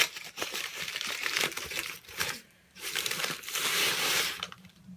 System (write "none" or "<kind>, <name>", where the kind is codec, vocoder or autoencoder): vocoder, BigVGAN v2